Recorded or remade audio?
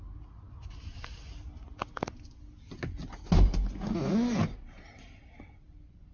recorded